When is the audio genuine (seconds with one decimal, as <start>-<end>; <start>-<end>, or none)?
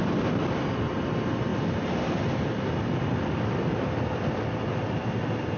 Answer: 0.0-5.6